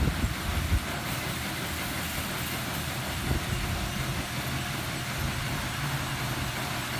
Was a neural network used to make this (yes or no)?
no